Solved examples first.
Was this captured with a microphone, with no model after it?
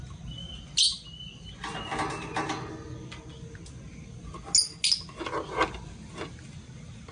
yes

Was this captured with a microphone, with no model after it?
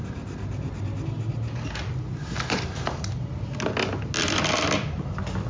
yes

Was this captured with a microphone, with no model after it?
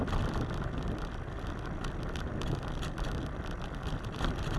yes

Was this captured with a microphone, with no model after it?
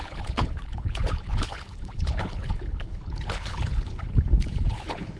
no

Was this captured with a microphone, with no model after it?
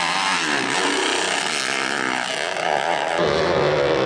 yes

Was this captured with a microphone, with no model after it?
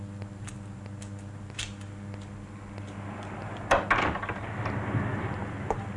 yes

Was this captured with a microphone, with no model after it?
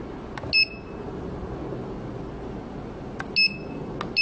yes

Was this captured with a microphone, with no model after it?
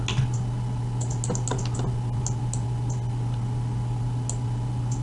yes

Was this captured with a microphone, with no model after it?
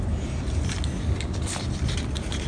yes